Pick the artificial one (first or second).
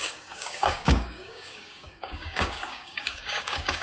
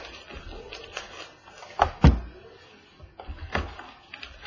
first